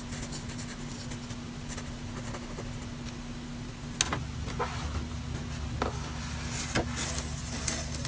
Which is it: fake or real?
real